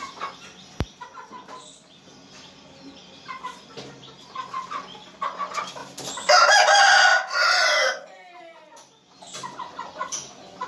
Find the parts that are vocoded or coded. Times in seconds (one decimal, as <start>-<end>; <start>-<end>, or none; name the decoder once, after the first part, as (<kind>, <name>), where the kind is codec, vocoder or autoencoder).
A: 3.0-4.8 (vocoder, BigVGAN v2); 7.1-8.4